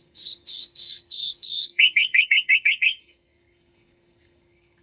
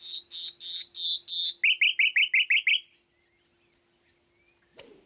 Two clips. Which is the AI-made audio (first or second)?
first